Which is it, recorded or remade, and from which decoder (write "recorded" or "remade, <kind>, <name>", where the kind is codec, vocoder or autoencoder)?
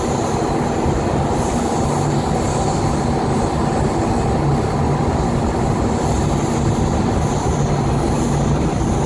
recorded